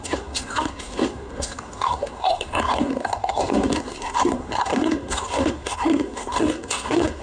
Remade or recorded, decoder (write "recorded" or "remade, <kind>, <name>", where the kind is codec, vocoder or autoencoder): remade, codec, SNAC